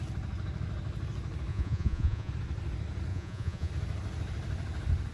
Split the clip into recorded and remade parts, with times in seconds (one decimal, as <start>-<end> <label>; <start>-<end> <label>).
0.0-1.5 recorded; 1.5-2.3 remade; 2.3-3.1 recorded; 3.1-3.7 remade; 3.7-5.1 recorded

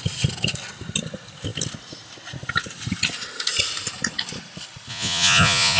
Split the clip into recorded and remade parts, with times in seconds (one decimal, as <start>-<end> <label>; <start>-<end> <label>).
0.0-4.9 recorded; 4.9-5.8 remade

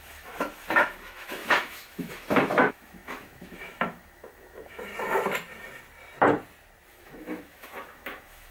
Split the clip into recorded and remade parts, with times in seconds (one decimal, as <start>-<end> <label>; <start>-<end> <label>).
0.0-4.9 remade; 4.9-6.9 recorded; 6.9-8.5 remade

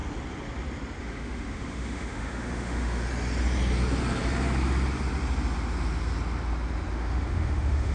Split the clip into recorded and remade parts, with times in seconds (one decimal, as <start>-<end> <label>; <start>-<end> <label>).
0.0-1.0 recorded; 1.0-3.1 remade; 3.1-6.9 recorded; 6.9-7.9 remade

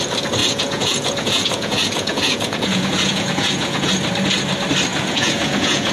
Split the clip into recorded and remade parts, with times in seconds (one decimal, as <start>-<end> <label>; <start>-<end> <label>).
0.0-0.4 recorded; 0.4-3.9 remade; 3.9-4.9 recorded; 4.9-5.9 remade